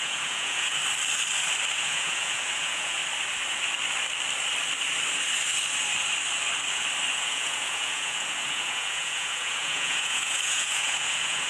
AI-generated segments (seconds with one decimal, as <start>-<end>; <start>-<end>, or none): 0.0-0.8; 1.7-3.0; 7.1-11.5